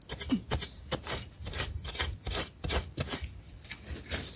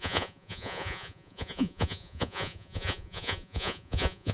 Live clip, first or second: first